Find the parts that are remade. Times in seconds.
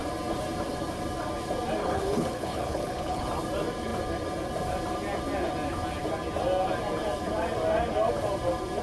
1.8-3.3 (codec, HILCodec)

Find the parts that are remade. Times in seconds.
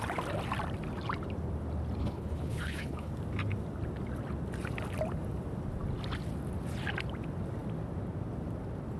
2.0-3.1 (codec, HILCodec)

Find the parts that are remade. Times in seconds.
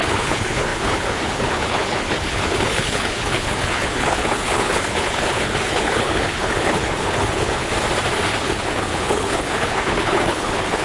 0.0-7.7 (codec, HILCodec); 8.4-10.8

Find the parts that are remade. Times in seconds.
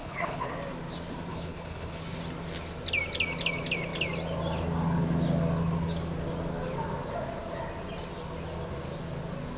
0.0-0.5 (codec, HILCodec); 1.3-2.0